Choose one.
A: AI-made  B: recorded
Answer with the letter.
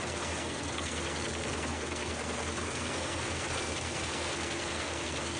A